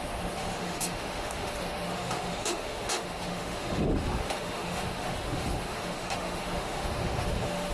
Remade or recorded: remade